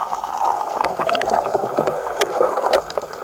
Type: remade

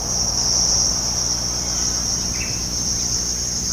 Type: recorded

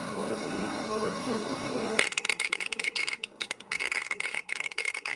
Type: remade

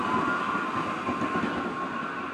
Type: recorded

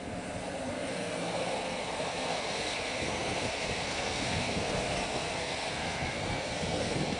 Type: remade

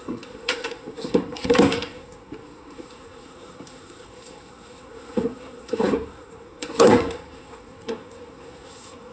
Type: remade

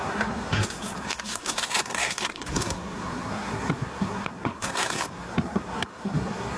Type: remade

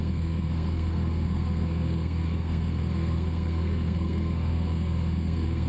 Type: remade